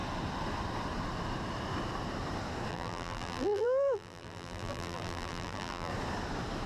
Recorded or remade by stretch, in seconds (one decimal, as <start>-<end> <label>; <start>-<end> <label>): 0.0-2.7 recorded; 2.7-5.9 remade; 5.9-6.7 recorded